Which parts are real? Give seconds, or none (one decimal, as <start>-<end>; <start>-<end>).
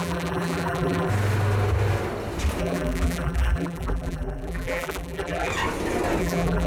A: 1.1-2.6; 5.5-6.2